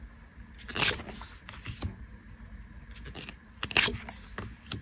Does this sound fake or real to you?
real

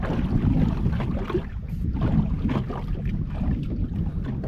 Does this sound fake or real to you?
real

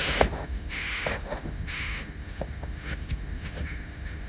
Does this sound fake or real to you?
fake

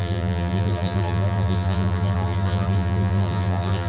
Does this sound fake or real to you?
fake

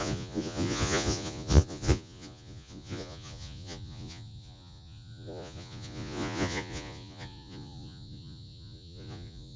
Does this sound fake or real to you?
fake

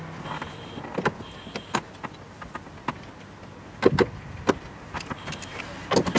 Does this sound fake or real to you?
real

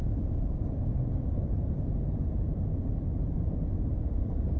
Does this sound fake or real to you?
real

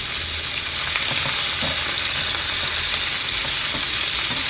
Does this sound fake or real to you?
real